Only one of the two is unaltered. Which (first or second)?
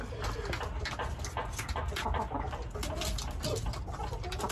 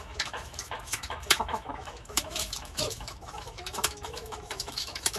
first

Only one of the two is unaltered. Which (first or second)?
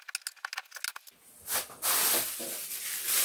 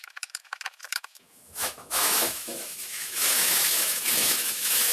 first